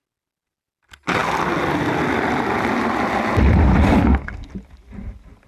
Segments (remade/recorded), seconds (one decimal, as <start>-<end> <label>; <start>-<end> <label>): 0.0-4.0 recorded; 4.0-4.5 remade; 4.5-5.5 recorded